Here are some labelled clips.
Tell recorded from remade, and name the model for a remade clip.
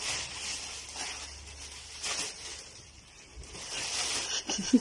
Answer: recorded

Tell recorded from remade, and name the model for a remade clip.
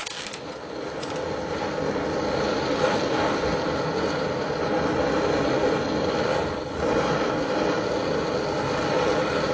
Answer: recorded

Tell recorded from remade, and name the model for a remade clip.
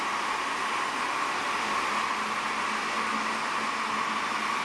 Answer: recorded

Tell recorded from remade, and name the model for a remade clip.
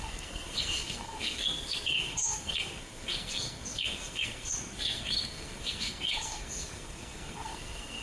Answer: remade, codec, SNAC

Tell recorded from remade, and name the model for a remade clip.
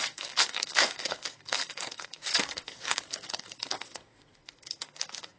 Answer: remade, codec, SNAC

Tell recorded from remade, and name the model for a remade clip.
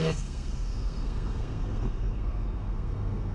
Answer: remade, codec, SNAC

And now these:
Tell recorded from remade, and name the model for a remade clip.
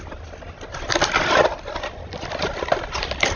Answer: recorded